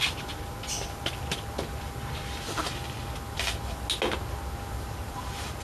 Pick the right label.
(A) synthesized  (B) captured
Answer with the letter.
B